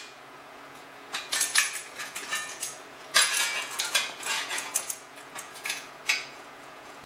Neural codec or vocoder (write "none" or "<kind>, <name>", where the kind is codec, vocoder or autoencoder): vocoder, Vocos